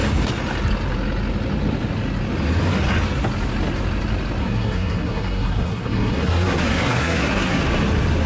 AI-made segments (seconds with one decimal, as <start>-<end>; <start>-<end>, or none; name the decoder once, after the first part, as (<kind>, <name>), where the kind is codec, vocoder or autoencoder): 4.4-7.6 (codec, SNAC)